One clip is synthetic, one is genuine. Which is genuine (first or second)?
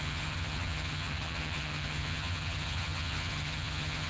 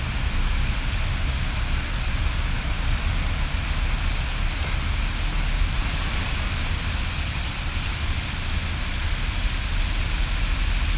second